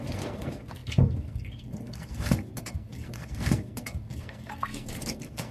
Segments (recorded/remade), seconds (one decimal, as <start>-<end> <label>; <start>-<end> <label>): 0.0-5.5 remade